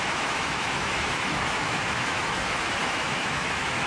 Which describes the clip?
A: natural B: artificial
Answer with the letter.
B